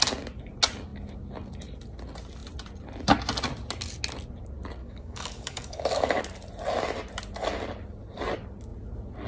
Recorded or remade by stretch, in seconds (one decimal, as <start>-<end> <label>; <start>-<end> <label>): 0.0-4.8 recorded; 4.8-6.2 remade; 6.2-9.3 recorded